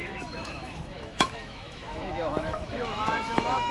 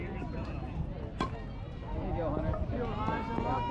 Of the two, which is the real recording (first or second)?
second